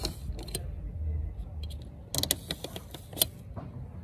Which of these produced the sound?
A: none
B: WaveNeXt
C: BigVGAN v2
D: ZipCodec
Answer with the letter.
A